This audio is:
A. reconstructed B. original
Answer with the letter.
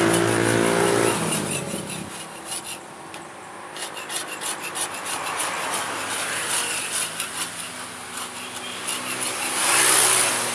B